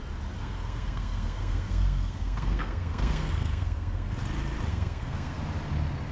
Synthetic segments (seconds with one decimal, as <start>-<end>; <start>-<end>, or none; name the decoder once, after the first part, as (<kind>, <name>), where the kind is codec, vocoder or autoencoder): 0.4-4.1 (codec, SNAC); 4.7-5.4